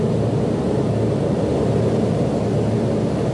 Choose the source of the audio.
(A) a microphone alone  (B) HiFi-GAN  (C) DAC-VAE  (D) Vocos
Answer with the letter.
A